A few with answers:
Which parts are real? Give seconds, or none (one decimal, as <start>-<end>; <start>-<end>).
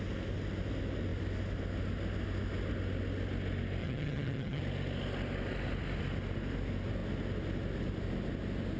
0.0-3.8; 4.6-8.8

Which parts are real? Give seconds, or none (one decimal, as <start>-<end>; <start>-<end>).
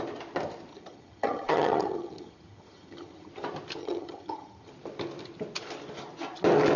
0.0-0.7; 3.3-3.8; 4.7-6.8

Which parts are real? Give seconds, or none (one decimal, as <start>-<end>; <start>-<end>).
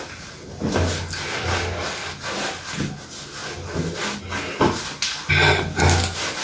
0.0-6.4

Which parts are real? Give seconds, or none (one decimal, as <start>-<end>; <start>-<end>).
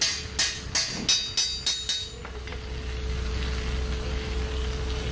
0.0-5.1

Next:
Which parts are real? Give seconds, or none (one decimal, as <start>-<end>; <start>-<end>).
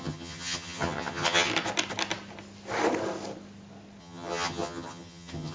1.5-4.0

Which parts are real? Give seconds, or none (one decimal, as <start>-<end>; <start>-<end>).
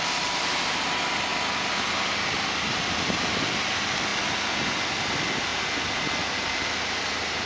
0.0-7.5